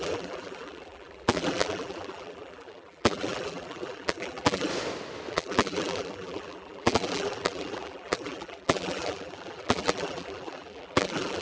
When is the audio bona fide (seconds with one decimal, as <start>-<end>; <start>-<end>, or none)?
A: 4.7-5.3